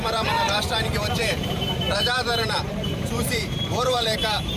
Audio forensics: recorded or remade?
remade